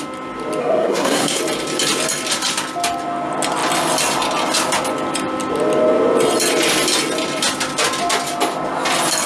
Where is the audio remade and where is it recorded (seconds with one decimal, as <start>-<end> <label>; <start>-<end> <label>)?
0.0-0.6 recorded; 0.6-1.4 remade; 1.4-9.3 recorded